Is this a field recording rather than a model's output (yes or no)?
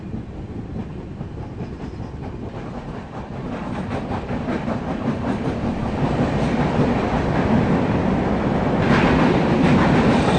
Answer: no